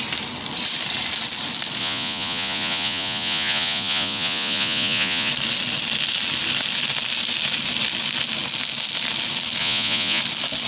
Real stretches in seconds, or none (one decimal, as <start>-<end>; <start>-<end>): 0.0-1.8; 5.3-9.6; 10.2-10.7